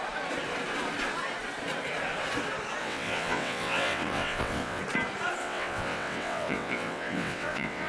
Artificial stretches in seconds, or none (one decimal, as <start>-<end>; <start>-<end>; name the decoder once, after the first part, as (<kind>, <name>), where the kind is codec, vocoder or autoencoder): 2.8-4.8 (vocoder, WaveNeXt); 5.4-7.9